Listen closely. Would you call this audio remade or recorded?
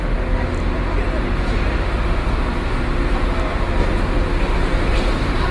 recorded